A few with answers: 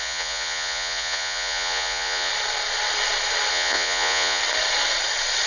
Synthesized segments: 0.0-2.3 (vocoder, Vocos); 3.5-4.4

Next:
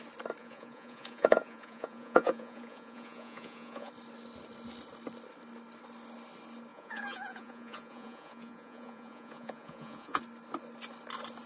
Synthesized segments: 0.4-3.9 (vocoder, Vocos); 6.7-10.2

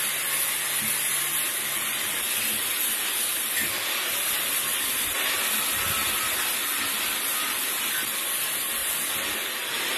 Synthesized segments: none

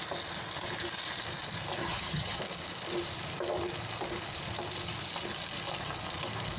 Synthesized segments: 1.8-2.4 (vocoder, HiFi-GAN)